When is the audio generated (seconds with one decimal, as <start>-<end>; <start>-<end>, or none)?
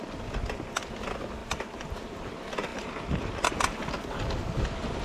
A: 1.4-2.2; 2.7-3.9